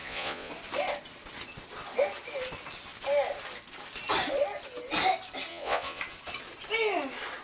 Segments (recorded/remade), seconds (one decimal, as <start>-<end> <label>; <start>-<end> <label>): 0.0-0.5 remade; 0.5-5.5 recorded; 5.5-6.0 remade; 6.0-7.4 recorded